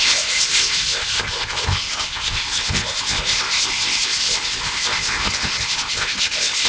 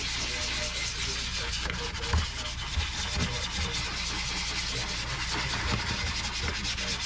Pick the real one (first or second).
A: second